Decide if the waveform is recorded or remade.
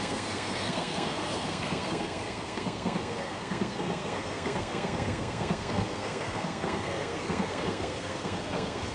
remade